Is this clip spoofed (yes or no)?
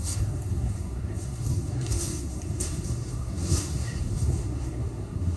yes